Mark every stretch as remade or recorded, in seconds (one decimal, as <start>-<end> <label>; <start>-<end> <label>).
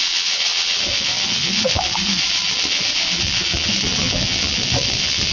0.0-5.3 remade